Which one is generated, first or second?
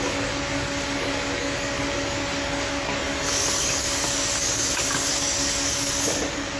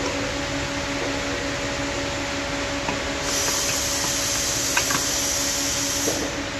first